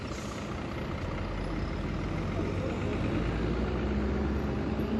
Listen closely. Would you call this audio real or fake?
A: real